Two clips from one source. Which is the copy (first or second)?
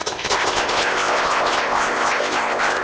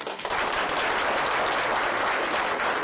first